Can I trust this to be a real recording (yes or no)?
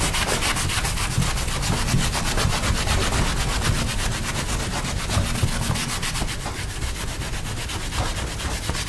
yes